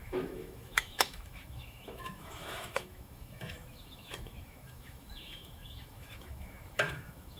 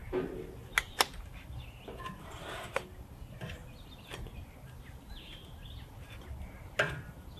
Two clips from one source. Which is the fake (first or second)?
first